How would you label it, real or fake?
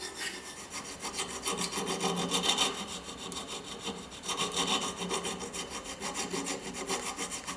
real